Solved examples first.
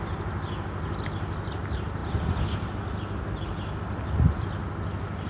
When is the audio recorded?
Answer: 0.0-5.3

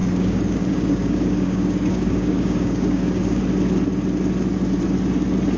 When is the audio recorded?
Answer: 3.4-5.6

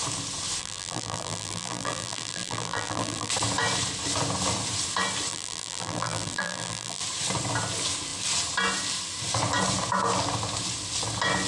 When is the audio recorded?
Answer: 0.0-0.6; 3.3-5.3; 7.0-11.5

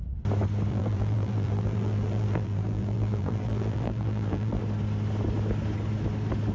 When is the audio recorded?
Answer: 0.0-0.7; 4.6-6.5

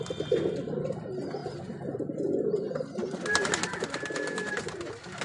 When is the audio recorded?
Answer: 0.0-5.2

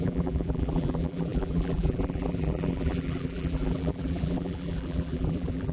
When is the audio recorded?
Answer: none

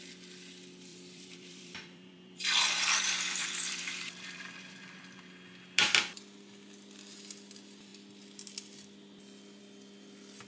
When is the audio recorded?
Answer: 0.0-0.9; 5.2-10.5